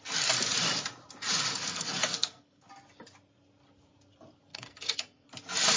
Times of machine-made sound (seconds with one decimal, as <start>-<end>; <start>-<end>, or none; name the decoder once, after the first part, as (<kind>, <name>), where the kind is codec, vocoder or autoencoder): 1.7-2.7 (codec, SNAC); 4.5-5.3